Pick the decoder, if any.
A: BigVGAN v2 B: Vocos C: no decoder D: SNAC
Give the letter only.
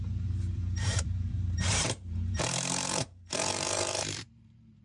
A